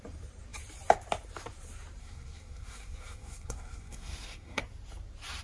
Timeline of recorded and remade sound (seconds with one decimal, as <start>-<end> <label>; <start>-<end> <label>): 0.0-2.0 recorded; 2.0-4.6 remade; 4.6-5.4 recorded